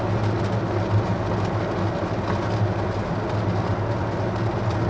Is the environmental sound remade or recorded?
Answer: recorded